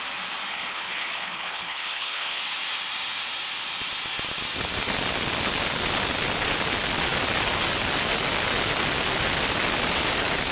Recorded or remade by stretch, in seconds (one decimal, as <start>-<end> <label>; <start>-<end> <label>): 0.0-0.5 recorded; 0.5-2.4 remade; 2.4-10.5 recorded